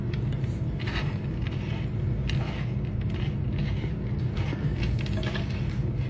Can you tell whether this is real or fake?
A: real